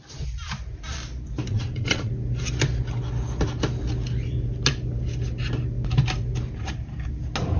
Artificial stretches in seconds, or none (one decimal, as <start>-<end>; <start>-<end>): 1.5-2.1